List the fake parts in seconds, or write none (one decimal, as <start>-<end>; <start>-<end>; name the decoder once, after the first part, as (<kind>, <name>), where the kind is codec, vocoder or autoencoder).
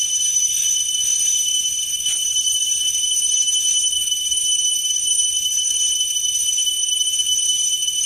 0.0-2.1 (autoencoder, DAC-VAE); 2.8-8.1